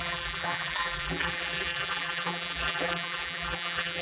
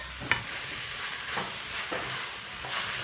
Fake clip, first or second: first